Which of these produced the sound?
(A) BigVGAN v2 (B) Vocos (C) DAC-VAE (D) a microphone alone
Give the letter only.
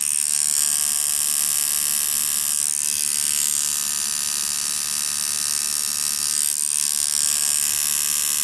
D